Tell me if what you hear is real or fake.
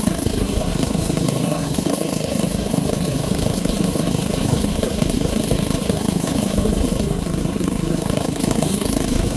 fake